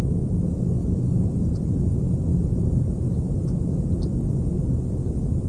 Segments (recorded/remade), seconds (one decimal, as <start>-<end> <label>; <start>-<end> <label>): 0.0-0.8 recorded; 0.8-1.6 remade; 1.6-2.3 recorded; 2.3-4.1 remade; 4.1-5.5 recorded